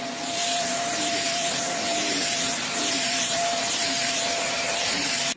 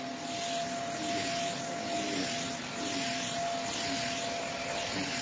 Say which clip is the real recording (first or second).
second